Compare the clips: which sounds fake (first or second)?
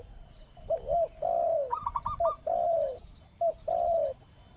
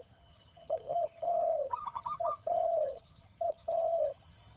second